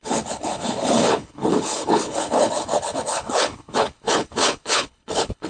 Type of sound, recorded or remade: remade